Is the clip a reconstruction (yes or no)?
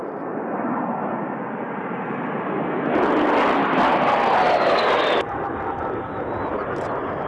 no